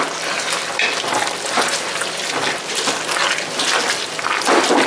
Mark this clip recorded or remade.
recorded